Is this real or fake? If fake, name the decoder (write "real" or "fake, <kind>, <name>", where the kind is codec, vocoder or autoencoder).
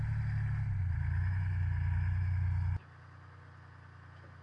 real